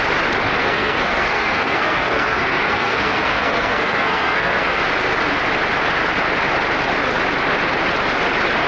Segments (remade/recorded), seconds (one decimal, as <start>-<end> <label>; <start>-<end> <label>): 0.0-0.6 recorded; 0.6-4.8 remade; 4.8-8.7 recorded

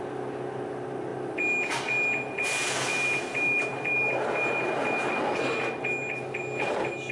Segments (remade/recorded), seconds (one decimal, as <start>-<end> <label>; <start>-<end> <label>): 0.0-7.1 recorded